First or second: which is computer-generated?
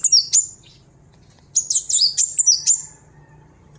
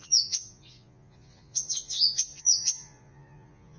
second